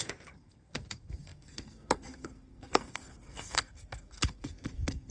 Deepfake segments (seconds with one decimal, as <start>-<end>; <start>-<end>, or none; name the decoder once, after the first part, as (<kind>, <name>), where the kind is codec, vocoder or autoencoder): 0.0-5.1 (codec, SNAC)